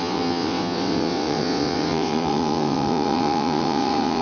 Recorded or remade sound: remade